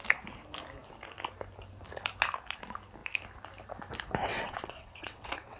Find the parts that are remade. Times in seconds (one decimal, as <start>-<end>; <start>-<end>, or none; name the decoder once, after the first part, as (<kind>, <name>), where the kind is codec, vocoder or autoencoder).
4.3-5.6 (vocoder, WaveNeXt)